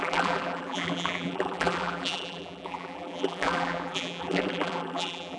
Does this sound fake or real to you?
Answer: fake